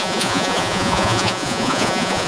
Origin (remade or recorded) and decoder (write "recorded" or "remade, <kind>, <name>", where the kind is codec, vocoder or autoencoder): remade, vocoder, Vocos